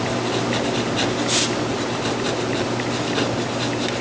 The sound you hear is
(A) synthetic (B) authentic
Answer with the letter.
B